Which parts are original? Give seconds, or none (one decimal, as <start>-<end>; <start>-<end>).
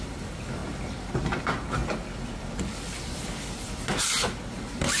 0.6-1.4; 1.8-4.6